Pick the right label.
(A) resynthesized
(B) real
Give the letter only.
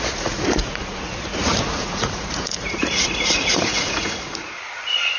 A